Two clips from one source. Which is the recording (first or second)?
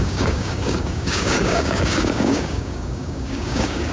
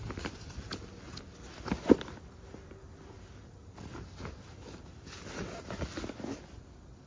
second